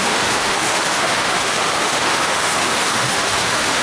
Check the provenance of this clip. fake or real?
fake